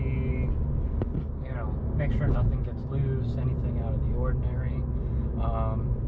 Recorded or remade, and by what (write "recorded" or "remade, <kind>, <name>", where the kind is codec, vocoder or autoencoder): recorded